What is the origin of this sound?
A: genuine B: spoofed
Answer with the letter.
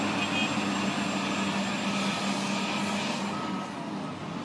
A